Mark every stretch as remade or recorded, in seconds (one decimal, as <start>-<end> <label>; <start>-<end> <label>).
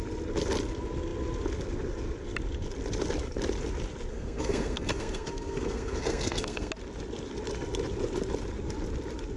0.0-4.1 recorded; 4.1-6.7 remade; 6.7-9.4 recorded